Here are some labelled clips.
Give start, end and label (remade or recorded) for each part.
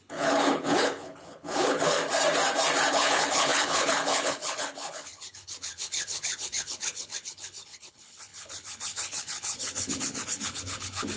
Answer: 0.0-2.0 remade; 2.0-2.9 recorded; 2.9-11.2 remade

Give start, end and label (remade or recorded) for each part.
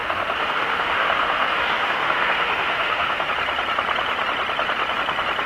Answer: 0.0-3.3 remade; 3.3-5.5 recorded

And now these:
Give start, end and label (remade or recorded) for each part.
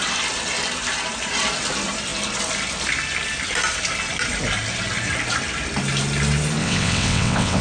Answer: 0.0-6.6 recorded; 6.6-7.6 remade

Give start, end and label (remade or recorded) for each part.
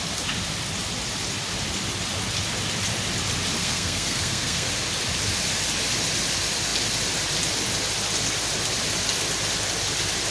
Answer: 0.0-3.6 recorded; 3.6-4.7 remade; 4.7-10.3 recorded